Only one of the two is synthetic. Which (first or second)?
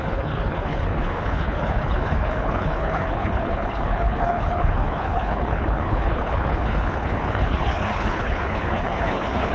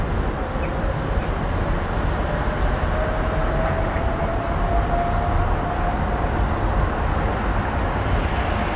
first